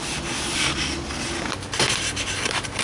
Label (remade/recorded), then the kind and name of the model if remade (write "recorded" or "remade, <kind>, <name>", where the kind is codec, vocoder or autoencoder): recorded